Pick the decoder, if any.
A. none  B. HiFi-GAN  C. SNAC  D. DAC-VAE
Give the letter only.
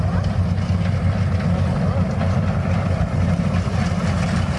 A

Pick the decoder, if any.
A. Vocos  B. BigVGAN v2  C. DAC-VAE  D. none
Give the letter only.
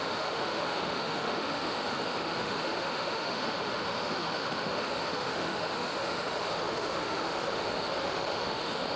C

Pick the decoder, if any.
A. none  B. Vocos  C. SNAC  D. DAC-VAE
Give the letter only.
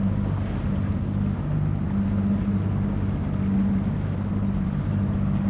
A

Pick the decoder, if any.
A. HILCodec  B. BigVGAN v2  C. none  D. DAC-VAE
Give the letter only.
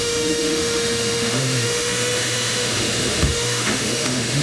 D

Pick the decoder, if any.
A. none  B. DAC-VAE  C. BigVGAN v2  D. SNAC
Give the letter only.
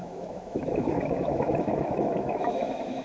B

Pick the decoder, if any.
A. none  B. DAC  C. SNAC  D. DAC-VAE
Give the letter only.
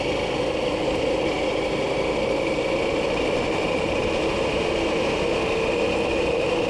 A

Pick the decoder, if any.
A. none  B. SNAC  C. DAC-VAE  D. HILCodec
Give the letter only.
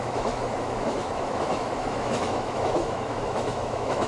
C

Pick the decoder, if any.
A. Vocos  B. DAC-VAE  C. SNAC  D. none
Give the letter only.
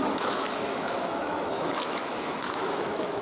B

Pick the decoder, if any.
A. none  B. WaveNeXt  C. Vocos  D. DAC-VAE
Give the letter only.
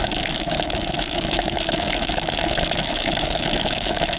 D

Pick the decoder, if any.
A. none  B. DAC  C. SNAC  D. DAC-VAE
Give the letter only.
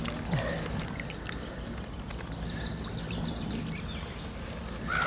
A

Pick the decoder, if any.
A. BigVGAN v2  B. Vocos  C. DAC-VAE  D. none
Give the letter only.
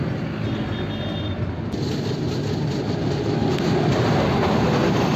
D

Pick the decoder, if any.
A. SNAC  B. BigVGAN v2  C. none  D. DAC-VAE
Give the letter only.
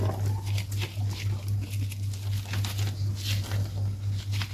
C